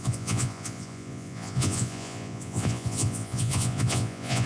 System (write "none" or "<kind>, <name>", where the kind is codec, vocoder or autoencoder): vocoder, Vocos